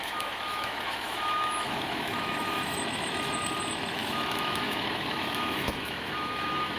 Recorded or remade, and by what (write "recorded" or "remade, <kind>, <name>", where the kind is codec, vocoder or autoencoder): remade, autoencoder, DAC-VAE